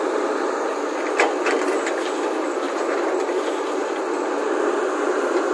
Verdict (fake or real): real